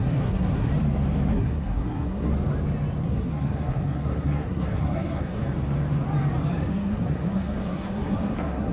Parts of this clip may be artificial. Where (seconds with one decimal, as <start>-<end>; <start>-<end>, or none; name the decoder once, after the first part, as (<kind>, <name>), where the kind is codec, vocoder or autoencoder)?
0.0-0.7 (codec, SNAC); 1.3-2.3; 3.0-5.4; 6.7-8.7